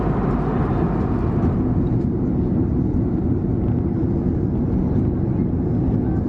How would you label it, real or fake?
real